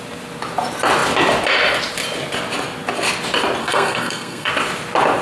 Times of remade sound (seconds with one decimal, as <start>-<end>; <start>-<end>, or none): 3.6-4.5